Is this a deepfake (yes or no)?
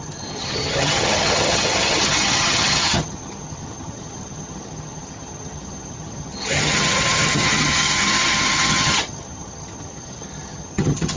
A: yes